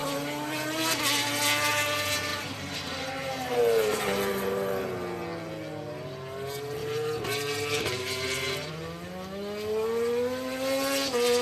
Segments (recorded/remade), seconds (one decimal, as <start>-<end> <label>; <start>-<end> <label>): 0.0-2.3 recorded; 2.3-4.9 remade; 4.9-6.8 recorded; 6.8-8.7 remade; 8.7-11.4 recorded